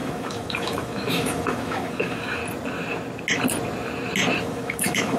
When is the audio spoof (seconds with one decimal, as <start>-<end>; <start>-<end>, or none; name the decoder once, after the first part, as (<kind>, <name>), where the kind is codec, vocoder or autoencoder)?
0.0-2.4 (autoencoder, DAC-VAE); 4.4-5.2